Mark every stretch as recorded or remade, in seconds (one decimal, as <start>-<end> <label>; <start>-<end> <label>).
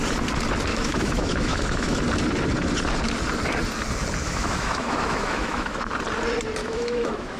0.0-0.7 recorded; 0.7-2.0 remade; 2.0-4.2 recorded; 4.2-5.9 remade; 5.9-6.6 recorded; 6.6-7.4 remade